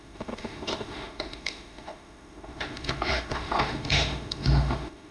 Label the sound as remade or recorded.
remade